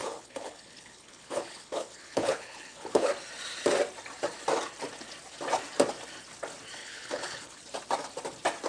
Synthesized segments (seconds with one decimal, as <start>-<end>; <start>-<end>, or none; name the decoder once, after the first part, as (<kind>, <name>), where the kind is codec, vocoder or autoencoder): 0.0-3.1 (codec, HILCodec); 6.8-7.6